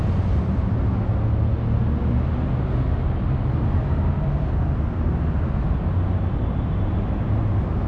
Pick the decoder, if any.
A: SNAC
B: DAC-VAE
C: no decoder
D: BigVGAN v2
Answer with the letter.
C